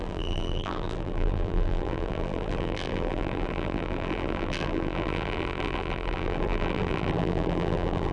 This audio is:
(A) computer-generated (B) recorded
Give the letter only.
A